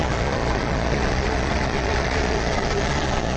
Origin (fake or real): fake